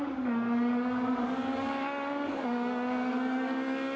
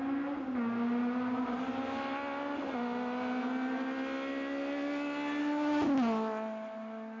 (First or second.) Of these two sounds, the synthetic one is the first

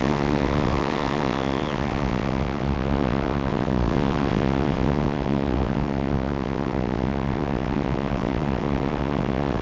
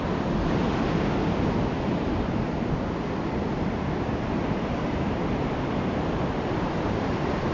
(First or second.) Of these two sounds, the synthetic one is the first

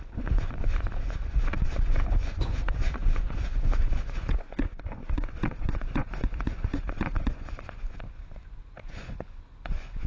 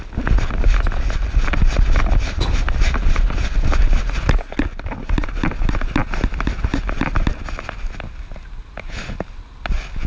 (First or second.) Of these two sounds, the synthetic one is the first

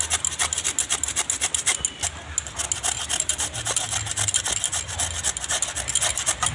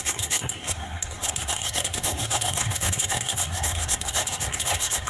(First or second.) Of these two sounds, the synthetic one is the second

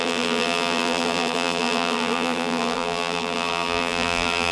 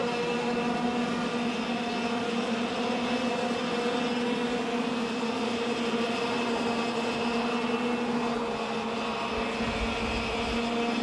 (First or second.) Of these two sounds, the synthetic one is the first